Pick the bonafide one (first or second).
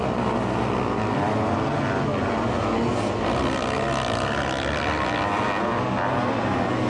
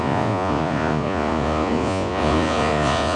first